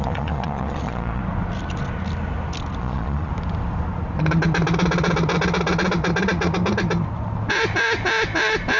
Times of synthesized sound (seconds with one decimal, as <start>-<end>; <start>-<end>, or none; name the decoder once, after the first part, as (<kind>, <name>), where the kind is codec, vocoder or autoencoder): 0.0-1.2 (vocoder, Vocos); 2.8-3.3